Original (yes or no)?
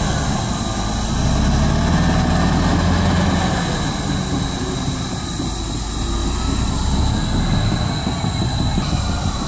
yes